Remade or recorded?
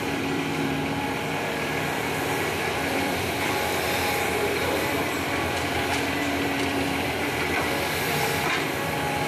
remade